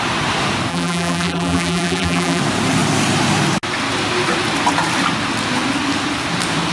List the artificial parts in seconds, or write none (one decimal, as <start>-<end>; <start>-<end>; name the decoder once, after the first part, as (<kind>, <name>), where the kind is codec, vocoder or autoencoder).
0.7-2.4 (vocoder, BigVGAN v2)